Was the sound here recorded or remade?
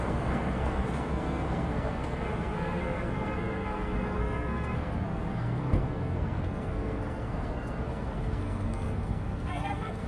remade